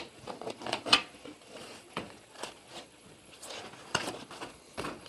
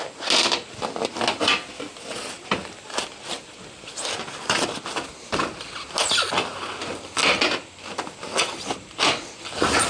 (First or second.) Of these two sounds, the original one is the second